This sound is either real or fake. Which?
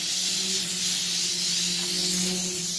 real